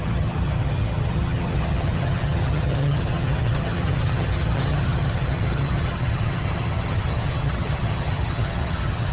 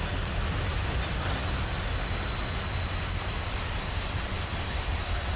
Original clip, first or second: second